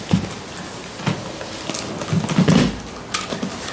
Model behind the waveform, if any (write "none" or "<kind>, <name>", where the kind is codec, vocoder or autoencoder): none